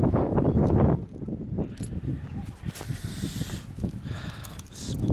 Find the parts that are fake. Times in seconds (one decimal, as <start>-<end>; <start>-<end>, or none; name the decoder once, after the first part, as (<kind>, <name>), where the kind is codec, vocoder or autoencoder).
0.0-0.6 (autoencoder, DAC-VAE); 3.7-5.1